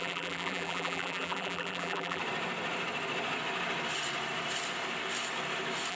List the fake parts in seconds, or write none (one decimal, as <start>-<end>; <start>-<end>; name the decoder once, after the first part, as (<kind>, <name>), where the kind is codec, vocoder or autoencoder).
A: 0.0-2.2 (vocoder, BigVGAN v2)